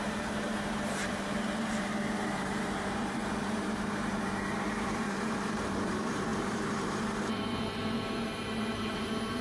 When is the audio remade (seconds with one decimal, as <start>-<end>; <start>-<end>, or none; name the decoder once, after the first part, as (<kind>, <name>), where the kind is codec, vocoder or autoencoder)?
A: 0.0-9.4 (vocoder, BigVGAN v2)